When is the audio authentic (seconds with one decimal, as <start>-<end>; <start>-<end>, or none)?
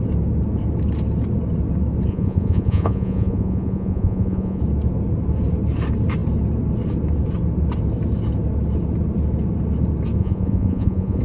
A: 0.0-2.1; 4.6-10.2